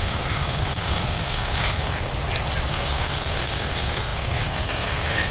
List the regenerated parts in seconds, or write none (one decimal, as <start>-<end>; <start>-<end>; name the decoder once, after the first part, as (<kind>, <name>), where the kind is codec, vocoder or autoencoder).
0.0-2.1 (codec, SNAC); 2.7-5.3